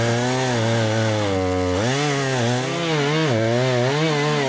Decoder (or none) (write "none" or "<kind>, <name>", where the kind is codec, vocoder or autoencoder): none